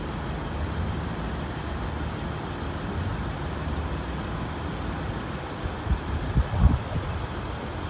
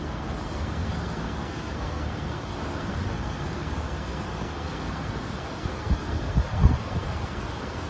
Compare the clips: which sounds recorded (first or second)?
first